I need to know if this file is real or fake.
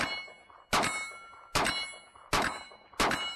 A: real